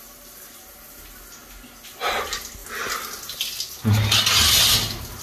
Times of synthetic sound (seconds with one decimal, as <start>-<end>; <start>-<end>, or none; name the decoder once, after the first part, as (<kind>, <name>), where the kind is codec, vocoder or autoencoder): none